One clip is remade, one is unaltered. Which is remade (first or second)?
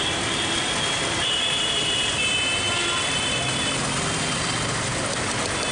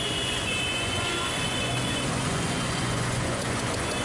second